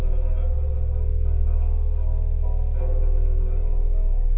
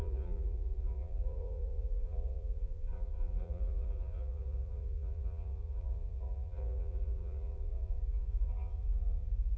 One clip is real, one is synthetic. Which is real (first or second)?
first